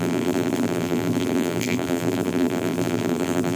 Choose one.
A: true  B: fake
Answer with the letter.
B